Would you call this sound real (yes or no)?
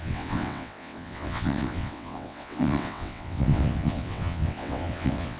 no